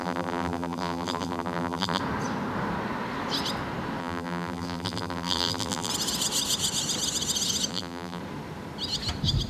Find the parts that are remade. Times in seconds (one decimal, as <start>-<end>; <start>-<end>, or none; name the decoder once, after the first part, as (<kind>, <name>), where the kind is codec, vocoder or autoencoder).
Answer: 0.0-2.0 (vocoder, BigVGAN v2); 4.0-5.9; 7.7-8.2